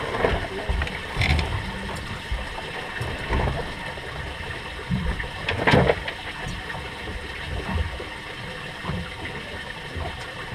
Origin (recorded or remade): recorded